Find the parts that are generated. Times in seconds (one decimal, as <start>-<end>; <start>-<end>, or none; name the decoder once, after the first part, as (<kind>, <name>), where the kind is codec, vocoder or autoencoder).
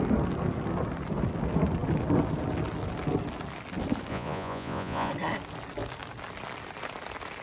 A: 4.1-5.1 (vocoder, Vocos)